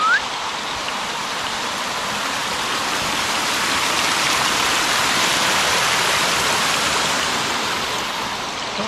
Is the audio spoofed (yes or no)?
no